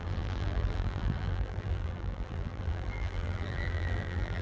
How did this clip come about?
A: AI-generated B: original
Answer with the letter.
A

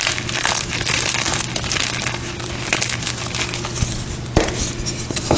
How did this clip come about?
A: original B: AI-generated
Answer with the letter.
A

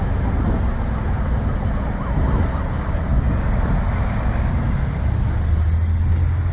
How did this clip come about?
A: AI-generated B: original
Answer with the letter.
B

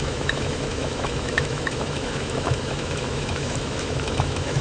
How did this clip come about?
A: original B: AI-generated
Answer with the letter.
B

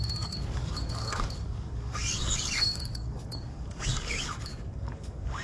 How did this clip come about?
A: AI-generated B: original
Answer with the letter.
A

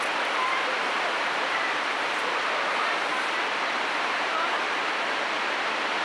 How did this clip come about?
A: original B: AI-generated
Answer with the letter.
B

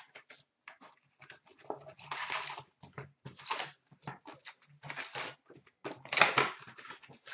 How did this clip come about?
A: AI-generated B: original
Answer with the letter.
B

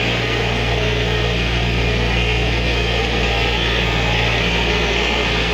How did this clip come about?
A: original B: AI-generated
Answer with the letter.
B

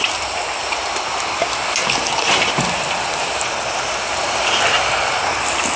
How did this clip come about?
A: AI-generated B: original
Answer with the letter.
B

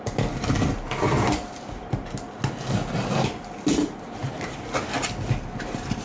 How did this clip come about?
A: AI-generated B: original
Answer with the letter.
B